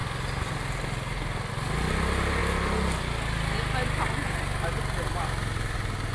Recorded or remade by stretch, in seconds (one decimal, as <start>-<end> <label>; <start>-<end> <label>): 0.0-6.1 recorded

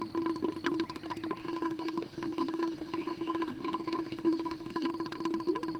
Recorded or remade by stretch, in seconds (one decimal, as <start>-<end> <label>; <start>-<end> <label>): 0.0-1.4 recorded; 1.4-4.9 remade; 4.9-5.8 recorded